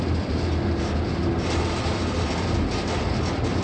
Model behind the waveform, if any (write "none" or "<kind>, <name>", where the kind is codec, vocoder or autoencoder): none